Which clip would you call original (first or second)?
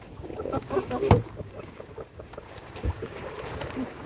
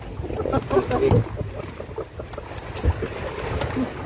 second